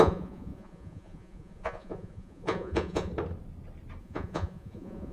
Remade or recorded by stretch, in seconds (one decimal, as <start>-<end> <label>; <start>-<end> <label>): 0.0-3.1 remade; 3.1-4.0 recorded; 4.0-5.1 remade

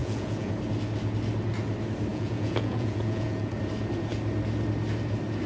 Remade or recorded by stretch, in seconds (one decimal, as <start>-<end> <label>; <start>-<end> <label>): 0.0-0.5 remade; 0.5-2.1 recorded; 2.1-3.6 remade; 3.6-5.5 recorded

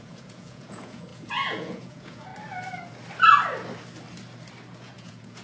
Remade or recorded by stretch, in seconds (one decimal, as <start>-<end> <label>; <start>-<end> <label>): 0.0-2.3 remade; 2.3-4.8 recorded; 4.8-5.4 remade

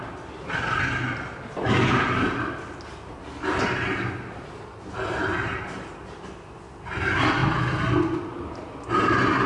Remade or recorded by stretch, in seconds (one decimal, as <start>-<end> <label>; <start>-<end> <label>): 0.0-9.5 recorded